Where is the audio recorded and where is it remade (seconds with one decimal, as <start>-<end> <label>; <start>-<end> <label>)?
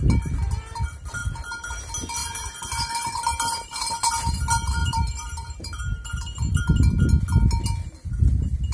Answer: 0.0-1.2 recorded; 1.2-1.8 remade; 1.8-4.8 recorded; 4.8-7.0 remade; 7.0-8.7 recorded